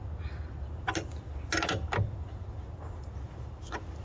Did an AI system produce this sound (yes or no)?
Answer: no